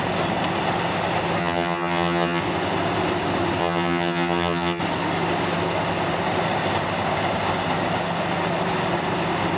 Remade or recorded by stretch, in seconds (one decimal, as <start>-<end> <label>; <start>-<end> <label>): 0.0-1.4 recorded; 1.4-2.4 remade; 2.4-3.6 recorded; 3.6-4.8 remade; 4.8-9.6 recorded